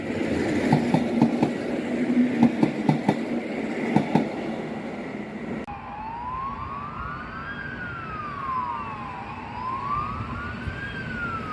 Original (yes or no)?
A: yes